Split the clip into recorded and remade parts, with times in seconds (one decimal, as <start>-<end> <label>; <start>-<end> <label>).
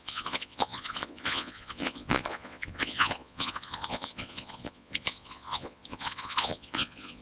0.0-7.2 remade